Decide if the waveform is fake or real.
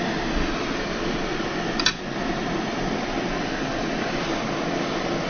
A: real